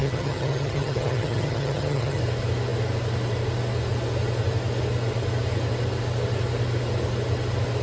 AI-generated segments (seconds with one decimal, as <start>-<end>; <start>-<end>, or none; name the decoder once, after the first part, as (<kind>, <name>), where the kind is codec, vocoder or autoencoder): 0.0-2.2 (vocoder, HiFi-GAN)